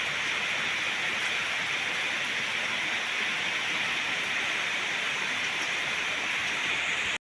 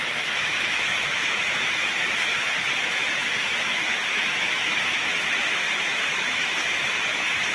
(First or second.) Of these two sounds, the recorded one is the first